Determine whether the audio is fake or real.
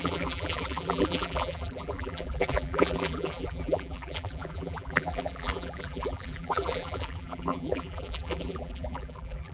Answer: fake